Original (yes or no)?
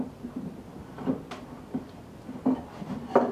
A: yes